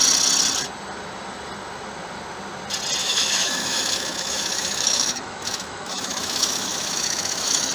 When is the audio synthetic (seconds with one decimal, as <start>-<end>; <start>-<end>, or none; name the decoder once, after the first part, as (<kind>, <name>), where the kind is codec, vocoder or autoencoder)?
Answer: 3.0-7.7 (autoencoder, DAC-VAE)